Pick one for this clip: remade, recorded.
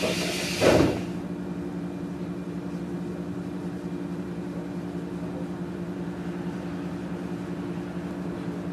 recorded